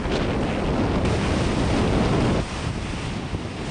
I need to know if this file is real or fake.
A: real